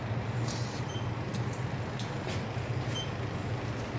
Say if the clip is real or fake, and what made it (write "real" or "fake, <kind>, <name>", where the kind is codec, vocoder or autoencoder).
real